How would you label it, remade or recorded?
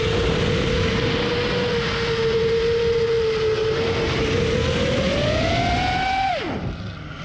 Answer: recorded